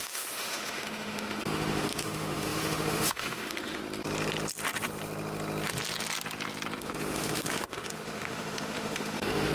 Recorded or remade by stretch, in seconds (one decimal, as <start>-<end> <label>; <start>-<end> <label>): 0.0-3.8 remade; 3.8-6.8 recorded; 6.8-9.5 remade